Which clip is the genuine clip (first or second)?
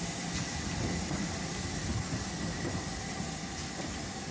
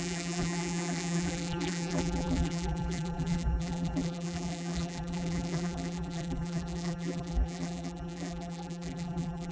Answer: first